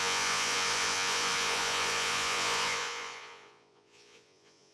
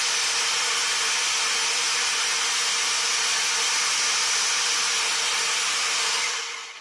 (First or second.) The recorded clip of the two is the second